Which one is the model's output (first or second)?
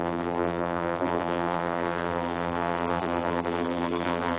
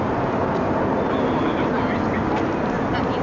first